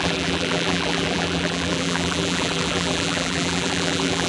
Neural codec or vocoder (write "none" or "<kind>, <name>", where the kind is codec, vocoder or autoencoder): vocoder, BigVGAN v2